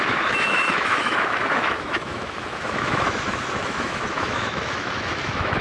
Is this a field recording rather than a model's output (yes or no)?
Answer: no